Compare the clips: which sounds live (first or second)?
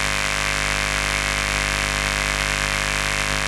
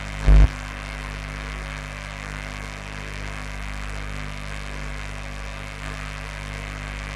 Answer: first